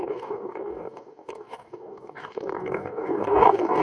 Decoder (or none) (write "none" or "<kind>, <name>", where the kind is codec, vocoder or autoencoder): codec, DAC